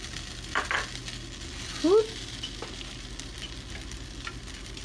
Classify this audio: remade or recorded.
recorded